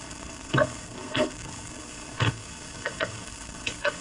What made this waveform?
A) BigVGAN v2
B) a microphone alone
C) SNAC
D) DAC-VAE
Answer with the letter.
C